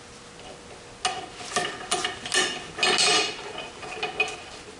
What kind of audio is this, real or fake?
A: real